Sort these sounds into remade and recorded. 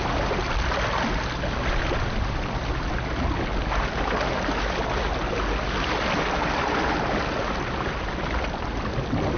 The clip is recorded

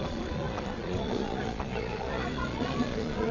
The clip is remade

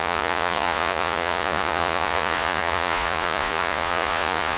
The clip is remade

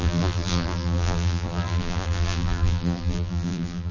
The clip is remade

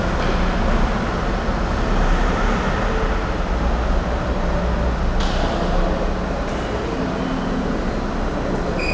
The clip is recorded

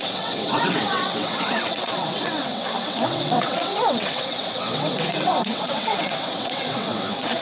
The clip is remade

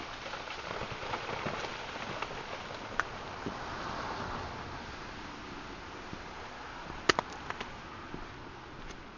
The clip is recorded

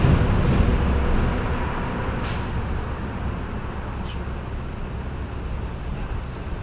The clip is recorded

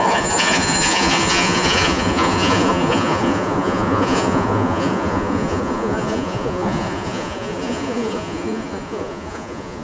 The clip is remade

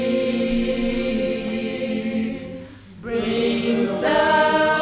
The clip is recorded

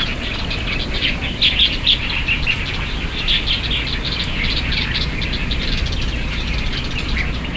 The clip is recorded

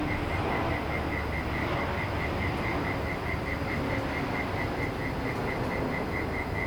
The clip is recorded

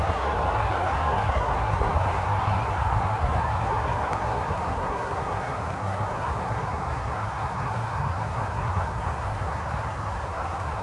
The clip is remade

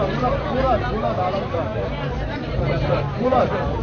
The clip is remade